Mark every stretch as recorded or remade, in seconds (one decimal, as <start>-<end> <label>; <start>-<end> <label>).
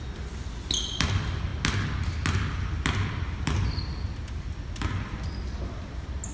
0.0-6.3 recorded